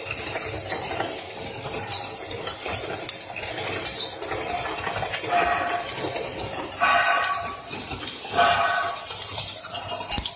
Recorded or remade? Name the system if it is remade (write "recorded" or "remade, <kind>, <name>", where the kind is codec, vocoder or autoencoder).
recorded